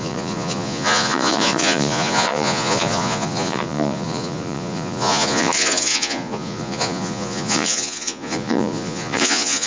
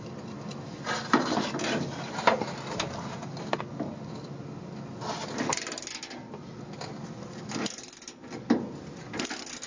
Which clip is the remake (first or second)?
first